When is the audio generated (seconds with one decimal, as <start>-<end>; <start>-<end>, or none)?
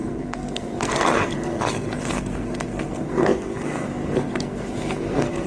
0.0-5.5